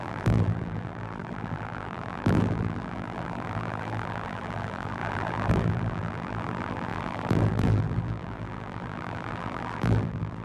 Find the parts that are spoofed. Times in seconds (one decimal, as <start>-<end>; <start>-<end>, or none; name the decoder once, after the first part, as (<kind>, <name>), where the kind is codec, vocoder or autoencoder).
0.0-10.4 (vocoder, BigVGAN v2)